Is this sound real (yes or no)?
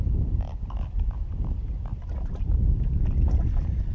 yes